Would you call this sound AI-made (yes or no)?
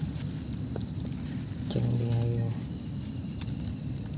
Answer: no